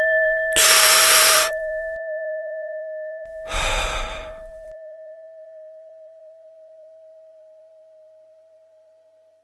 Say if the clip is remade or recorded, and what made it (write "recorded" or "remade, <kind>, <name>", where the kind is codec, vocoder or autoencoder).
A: remade, vocoder, BigVGAN v2